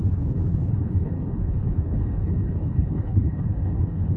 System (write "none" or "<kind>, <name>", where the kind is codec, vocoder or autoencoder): codec, HILCodec